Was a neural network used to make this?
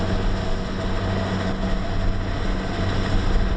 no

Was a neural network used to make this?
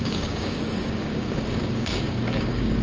yes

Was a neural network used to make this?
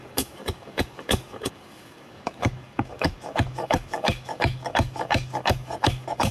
yes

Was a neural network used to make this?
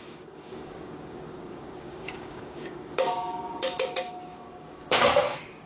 yes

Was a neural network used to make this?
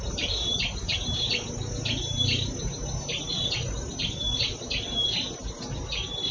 no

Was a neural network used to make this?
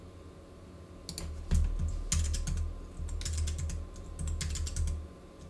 no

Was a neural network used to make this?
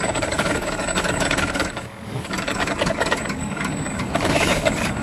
yes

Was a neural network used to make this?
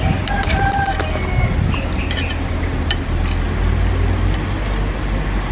no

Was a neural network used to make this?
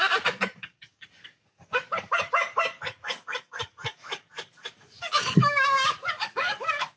yes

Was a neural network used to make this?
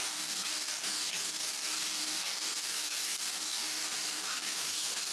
yes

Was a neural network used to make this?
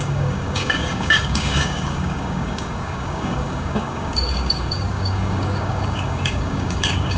yes